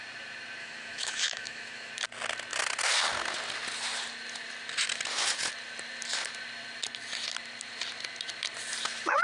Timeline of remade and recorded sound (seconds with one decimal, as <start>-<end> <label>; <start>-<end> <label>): 0.0-0.6 recorded; 0.6-1.9 remade; 1.9-9.2 recorded